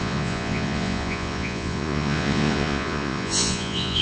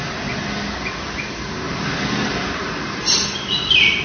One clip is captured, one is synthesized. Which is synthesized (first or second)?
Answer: first